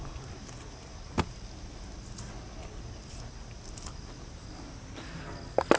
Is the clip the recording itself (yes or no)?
yes